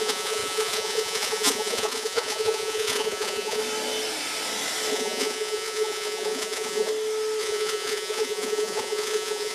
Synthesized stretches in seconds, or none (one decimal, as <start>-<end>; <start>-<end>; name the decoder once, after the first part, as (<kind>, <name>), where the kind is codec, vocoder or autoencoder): 0.0-3.6 (vocoder, Vocos); 4.9-6.9; 7.4-9.5